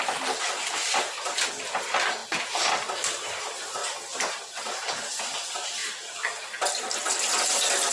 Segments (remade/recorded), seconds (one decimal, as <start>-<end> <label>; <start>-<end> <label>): 0.0-7.9 recorded